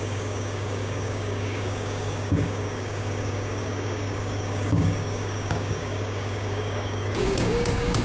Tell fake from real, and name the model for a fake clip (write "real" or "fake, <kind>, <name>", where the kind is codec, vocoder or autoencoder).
fake, codec, DAC